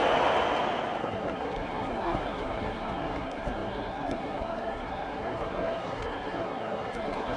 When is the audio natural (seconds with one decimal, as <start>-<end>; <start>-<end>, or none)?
0.0-1.0